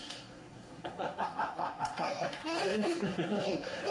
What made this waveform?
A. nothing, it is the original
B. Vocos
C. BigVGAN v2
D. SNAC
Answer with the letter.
D